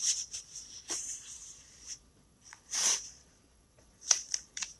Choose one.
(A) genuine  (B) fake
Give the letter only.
B